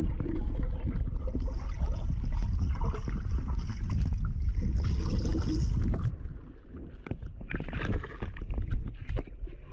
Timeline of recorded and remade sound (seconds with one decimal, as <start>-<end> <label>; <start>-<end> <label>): 0.0-9.7 recorded